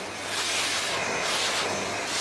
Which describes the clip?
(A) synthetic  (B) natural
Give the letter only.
B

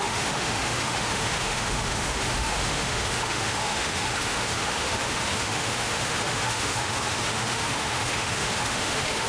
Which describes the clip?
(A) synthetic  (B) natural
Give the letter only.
A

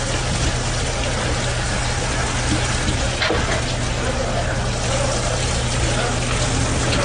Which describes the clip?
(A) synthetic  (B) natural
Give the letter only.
B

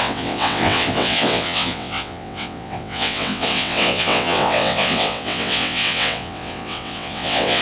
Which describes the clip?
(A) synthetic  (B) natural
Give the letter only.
A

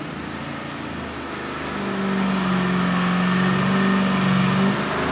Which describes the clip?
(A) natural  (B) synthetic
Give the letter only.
A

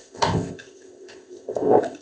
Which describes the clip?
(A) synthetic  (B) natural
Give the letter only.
A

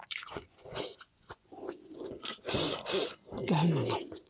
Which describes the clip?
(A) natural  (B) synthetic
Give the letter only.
B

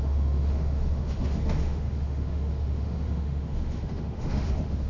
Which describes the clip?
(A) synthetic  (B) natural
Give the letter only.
A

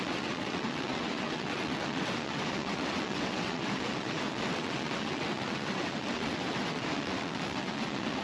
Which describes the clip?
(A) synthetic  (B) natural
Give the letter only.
A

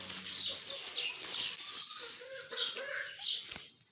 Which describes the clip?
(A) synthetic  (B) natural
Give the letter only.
B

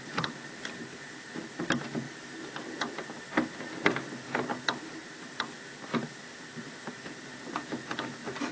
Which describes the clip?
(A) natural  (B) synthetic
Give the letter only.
A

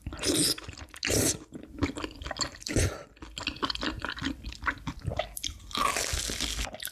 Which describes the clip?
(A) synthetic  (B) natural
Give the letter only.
B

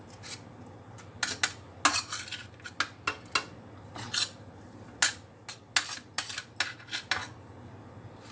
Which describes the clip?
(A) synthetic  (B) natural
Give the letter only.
B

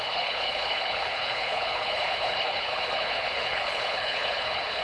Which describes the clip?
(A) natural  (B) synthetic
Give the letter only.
B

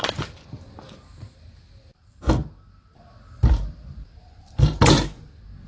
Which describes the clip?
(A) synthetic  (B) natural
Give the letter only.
B